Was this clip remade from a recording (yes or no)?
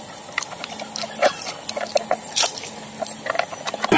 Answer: no